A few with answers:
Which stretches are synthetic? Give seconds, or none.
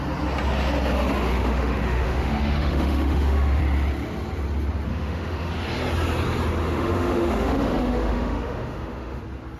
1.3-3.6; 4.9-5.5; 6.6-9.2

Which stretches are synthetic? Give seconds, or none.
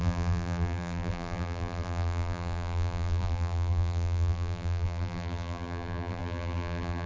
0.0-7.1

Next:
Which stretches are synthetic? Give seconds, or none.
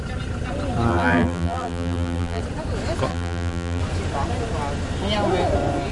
0.9-2.4; 3.1-3.8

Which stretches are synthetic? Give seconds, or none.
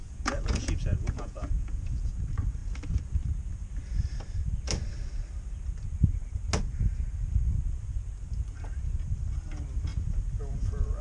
0.0-2.1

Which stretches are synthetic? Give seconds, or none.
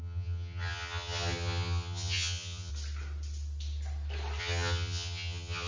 0.0-2.7; 4.4-5.7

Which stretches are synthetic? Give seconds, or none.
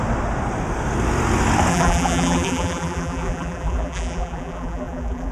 1.7-5.3